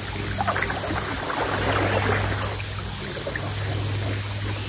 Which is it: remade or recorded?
recorded